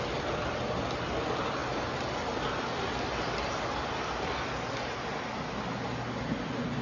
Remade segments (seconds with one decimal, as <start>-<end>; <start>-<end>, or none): none